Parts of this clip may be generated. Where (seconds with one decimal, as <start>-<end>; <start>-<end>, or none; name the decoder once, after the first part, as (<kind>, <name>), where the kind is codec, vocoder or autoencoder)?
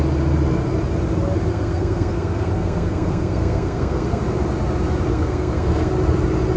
1.5-4.2 (codec, SNAC); 5.1-5.9